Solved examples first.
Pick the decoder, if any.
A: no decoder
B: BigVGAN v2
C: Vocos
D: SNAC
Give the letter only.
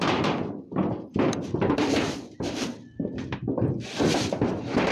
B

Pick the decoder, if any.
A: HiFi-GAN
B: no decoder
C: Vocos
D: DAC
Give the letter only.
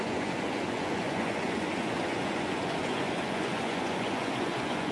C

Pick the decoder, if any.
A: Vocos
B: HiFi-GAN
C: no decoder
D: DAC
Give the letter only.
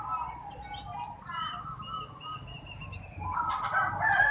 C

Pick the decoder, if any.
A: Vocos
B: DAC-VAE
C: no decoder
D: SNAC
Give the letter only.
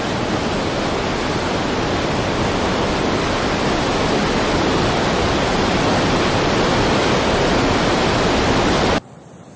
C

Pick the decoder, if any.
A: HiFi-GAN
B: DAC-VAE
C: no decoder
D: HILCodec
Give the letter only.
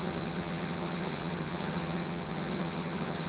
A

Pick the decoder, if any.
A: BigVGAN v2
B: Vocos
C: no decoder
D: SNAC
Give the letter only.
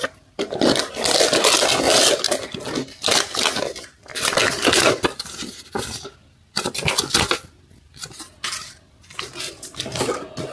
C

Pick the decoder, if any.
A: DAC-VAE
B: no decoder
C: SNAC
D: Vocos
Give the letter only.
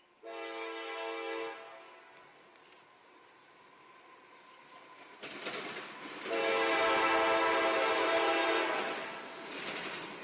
B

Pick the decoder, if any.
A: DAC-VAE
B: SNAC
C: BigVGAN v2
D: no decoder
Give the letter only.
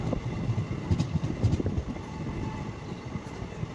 D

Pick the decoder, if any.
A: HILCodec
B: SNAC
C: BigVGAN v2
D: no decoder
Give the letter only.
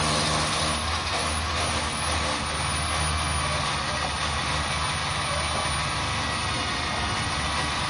D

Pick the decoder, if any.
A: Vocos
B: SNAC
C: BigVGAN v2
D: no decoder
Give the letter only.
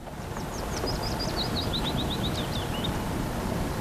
D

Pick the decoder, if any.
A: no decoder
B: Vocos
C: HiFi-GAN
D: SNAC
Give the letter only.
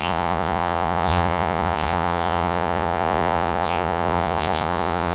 B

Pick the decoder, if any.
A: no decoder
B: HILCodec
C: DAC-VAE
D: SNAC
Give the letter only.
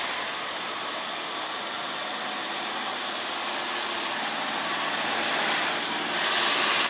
A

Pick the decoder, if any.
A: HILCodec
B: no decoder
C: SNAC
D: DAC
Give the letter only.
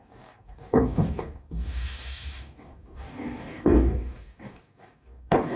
D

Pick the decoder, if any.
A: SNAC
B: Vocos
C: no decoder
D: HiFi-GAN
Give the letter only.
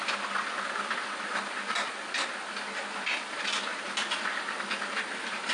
C